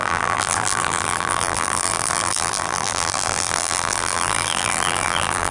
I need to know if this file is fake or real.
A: fake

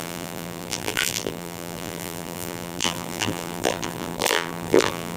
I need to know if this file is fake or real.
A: fake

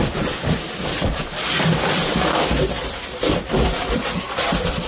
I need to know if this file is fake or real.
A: fake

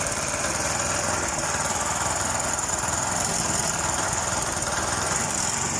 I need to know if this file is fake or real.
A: fake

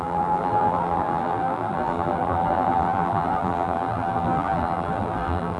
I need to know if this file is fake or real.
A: fake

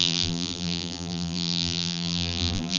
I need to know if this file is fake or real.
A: fake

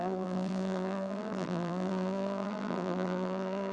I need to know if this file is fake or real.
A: fake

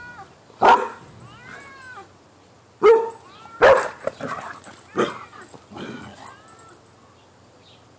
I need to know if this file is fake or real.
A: real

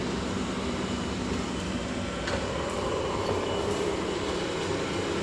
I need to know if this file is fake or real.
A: real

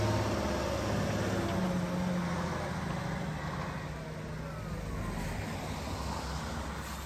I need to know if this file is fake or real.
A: real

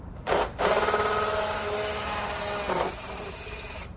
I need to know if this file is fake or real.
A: real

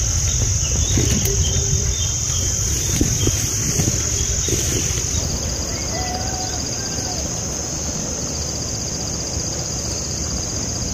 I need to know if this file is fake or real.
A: real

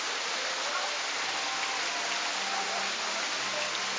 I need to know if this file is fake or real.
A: real